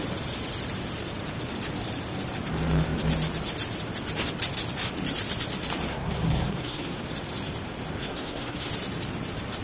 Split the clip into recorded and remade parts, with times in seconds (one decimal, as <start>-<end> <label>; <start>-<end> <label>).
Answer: 0.0-5.9 recorded; 5.9-7.0 remade; 7.0-8.0 recorded; 8.0-8.7 remade; 8.7-9.6 recorded